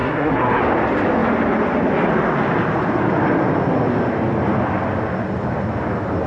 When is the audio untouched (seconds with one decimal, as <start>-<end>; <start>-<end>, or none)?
0.6-6.3